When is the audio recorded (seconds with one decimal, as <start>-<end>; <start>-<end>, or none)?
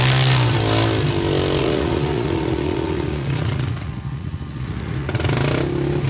0.0-1.6; 5.3-6.1